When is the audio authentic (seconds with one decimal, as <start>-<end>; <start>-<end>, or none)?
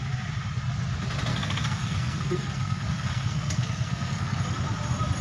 0.0-1.3; 4.4-5.2